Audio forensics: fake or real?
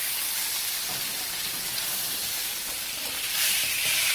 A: fake